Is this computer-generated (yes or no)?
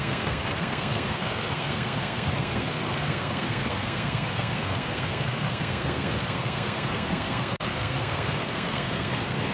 yes